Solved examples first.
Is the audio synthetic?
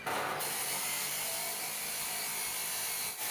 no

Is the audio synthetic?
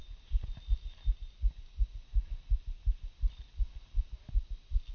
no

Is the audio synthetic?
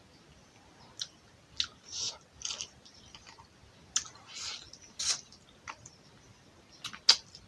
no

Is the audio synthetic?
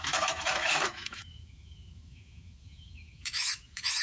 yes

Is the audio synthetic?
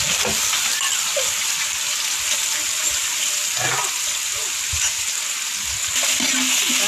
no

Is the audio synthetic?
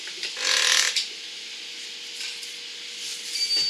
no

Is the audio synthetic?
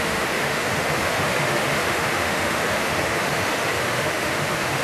yes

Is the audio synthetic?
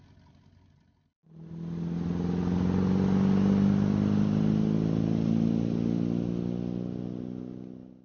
no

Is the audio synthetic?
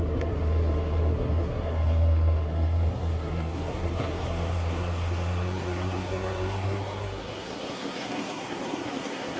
yes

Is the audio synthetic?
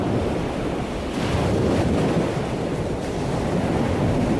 no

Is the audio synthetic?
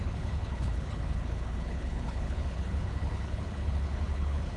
yes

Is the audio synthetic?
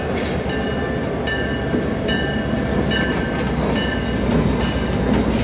no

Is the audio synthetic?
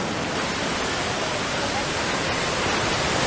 no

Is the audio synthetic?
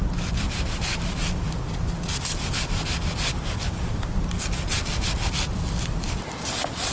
no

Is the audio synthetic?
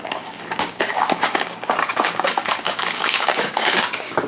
yes